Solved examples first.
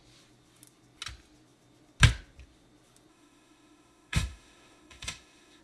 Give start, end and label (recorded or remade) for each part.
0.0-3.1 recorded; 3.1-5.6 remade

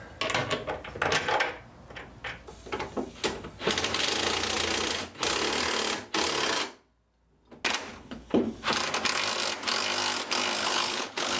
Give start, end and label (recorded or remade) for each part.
0.0-7.9 recorded; 7.9-8.4 remade; 8.4-10.6 recorded; 10.6-11.4 remade

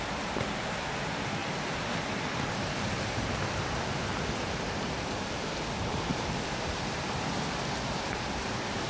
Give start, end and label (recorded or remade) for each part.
0.0-1.4 recorded; 1.4-5.4 remade; 5.4-6.1 recorded; 6.1-7.0 remade; 7.0-8.9 recorded

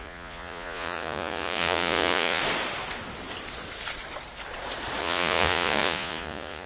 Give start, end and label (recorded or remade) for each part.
0.0-2.4 remade; 2.4-5.0 recorded; 5.0-6.7 remade

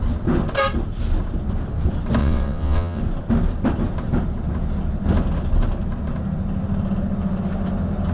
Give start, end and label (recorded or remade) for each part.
0.0-2.2 recorded; 2.2-3.0 remade; 3.0-8.1 recorded